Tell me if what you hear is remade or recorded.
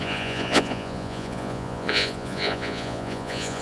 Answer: remade